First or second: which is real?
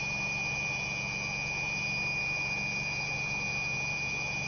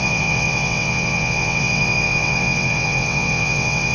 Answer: first